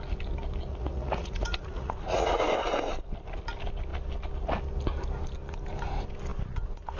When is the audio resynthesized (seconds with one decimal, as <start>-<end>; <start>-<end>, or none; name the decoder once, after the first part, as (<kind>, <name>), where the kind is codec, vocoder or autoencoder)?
0.7-2.4 (vocoder, Vocos)